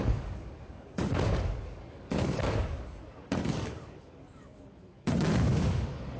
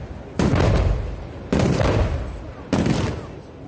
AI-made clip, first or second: first